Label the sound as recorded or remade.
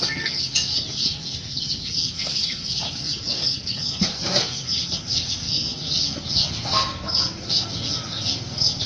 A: remade